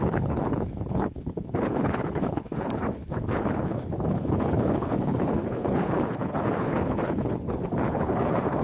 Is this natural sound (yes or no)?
no